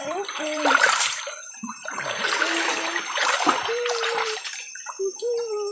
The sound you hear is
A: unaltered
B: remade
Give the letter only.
B